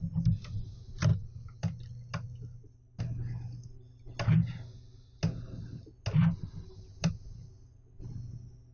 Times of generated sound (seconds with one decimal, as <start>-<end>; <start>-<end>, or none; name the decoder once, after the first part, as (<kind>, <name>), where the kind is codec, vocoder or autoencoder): none